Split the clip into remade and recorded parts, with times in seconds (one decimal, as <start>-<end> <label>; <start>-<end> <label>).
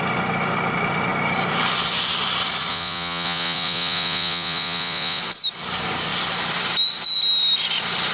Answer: 0.0-2.7 recorded; 2.7-5.2 remade; 5.2-8.1 recorded